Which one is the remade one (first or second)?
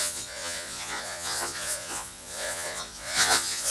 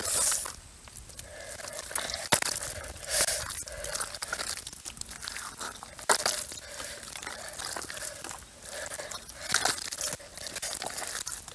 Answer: first